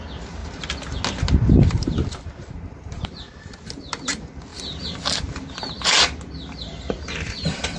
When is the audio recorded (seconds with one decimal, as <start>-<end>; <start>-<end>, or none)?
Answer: 0.0-7.8